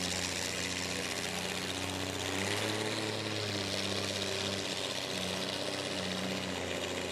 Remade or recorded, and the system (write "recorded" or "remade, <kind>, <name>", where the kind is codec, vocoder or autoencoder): recorded